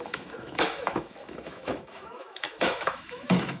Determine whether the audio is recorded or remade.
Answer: remade